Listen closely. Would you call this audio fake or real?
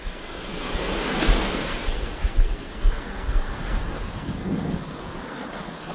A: fake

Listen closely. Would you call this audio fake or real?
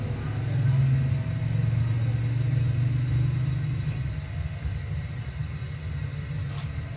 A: real